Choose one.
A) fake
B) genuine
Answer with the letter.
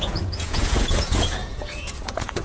A